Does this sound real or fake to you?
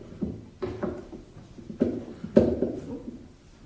real